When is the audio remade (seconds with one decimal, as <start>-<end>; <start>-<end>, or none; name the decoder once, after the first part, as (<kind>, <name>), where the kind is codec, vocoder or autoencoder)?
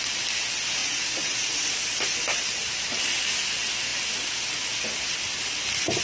0.8-1.7 (vocoder, Vocos)